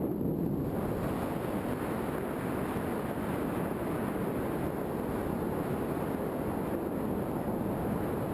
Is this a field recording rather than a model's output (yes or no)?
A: yes